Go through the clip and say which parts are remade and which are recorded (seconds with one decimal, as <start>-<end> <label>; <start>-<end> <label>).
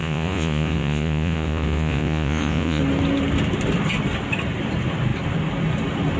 0.0-2.8 remade; 2.8-6.2 recorded